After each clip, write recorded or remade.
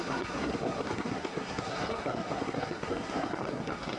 remade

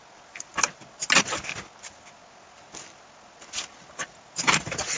recorded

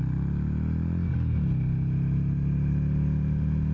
recorded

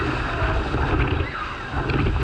recorded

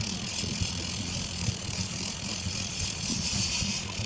remade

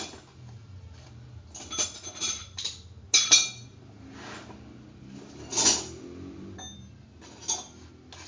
recorded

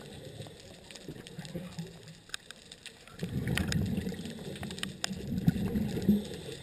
recorded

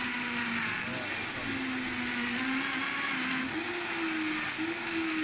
recorded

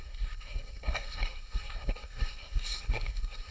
remade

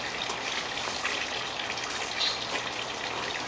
recorded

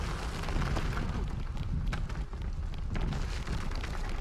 recorded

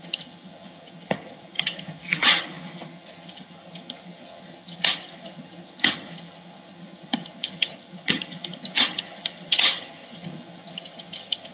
remade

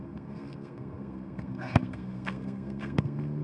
remade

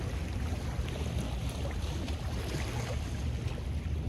recorded